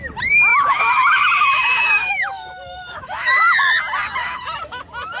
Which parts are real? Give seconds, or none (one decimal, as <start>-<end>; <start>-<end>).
0.0-0.5; 3.6-4.2; 4.8-5.2